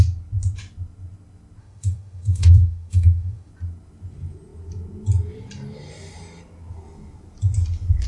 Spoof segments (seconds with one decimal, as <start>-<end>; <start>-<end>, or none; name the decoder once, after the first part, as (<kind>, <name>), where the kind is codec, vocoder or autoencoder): 1.6-3.5 (autoencoder, DAC-VAE)